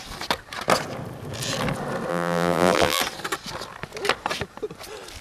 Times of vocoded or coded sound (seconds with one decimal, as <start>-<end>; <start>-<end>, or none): 2.1-3.0